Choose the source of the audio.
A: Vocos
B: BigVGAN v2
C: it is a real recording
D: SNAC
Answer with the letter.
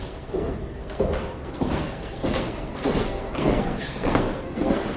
D